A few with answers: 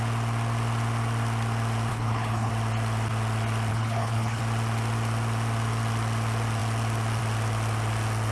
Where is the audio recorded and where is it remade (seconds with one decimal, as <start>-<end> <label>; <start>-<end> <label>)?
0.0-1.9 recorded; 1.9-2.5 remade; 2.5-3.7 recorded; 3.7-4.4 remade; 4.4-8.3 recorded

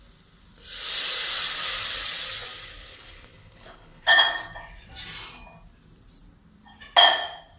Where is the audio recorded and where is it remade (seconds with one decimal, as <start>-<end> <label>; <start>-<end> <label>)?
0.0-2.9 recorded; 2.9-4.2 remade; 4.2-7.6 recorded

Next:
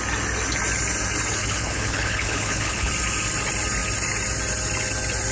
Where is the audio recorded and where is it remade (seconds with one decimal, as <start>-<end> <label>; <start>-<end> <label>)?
0.0-1.4 recorded; 1.4-2.9 remade; 2.9-5.3 recorded

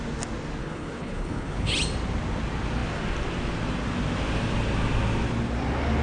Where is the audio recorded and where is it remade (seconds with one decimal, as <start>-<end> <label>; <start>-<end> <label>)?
0.0-0.6 recorded; 0.6-1.7 remade; 1.7-6.0 recorded